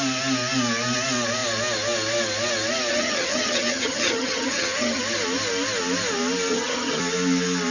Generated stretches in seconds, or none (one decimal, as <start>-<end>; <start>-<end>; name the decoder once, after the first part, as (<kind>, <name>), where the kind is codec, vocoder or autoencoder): 2.9-5.0 (vocoder, HiFi-GAN); 6.5-7.0